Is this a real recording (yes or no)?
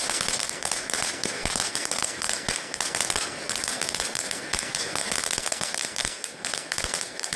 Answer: no